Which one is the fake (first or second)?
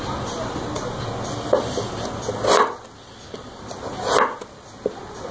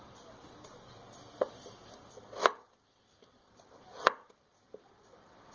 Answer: second